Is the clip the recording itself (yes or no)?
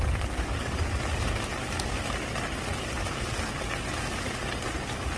yes